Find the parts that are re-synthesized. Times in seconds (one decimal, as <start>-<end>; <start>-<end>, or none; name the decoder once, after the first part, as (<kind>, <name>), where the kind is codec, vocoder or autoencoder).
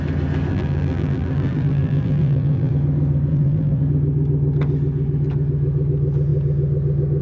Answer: 0.5-2.7 (vocoder, BigVGAN v2); 3.3-3.8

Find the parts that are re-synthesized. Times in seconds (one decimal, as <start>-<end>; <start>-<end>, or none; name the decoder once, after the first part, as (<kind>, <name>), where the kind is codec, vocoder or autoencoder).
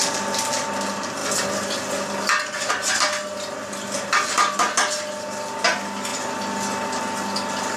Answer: none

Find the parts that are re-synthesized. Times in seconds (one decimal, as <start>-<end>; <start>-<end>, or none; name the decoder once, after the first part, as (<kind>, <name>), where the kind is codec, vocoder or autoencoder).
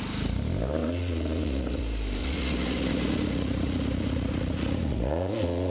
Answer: 0.8-1.8 (vocoder, Vocos); 2.2-5.7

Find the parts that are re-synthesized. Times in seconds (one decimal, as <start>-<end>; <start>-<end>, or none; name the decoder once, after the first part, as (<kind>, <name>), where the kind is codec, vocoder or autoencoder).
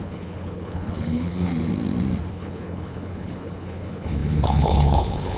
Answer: 0.0-1.5 (codec, HILCodec); 2.3-5.4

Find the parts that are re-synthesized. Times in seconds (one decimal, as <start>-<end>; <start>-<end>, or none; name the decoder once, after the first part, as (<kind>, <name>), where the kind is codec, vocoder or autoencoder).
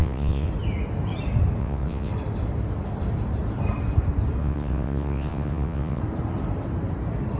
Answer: 0.0-0.5 (vocoder, WaveNeXt); 1.6-2.1; 4.4-6.0